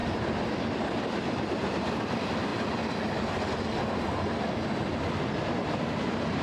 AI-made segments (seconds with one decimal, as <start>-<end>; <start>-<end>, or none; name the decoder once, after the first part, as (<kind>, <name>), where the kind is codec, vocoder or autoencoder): 0.0-2.5 (vocoder, BigVGAN v2); 5.9-6.4